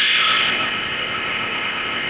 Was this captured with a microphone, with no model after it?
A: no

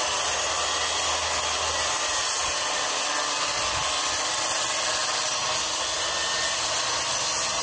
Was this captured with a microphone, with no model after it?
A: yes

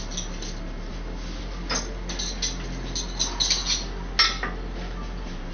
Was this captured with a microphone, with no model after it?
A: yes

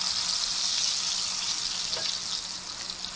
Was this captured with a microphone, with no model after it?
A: yes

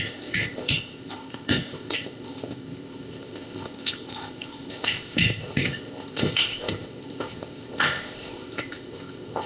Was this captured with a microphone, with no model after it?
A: no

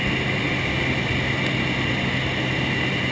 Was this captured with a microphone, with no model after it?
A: yes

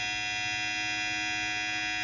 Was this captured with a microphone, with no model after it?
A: yes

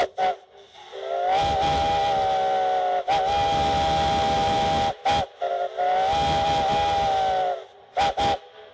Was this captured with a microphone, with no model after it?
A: yes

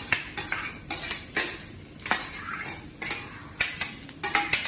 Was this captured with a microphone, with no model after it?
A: yes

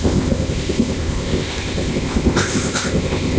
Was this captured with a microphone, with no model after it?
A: no